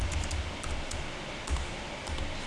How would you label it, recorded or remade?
recorded